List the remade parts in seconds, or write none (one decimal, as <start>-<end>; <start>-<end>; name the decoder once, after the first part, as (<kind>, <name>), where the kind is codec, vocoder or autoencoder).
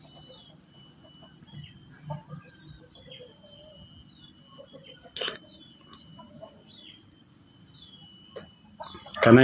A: none